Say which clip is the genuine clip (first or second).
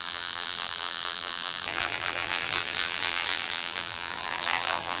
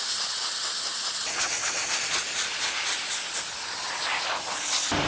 second